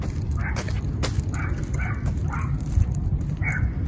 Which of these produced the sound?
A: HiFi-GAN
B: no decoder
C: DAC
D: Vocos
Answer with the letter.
B